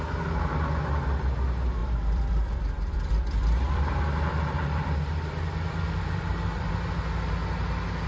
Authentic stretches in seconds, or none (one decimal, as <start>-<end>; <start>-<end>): 0.0-1.8; 6.7-8.1